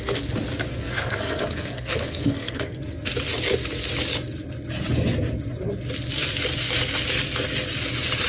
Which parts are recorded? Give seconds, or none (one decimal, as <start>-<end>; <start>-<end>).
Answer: 0.0-0.7; 2.8-8.3